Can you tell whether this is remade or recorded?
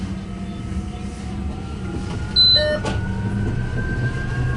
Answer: recorded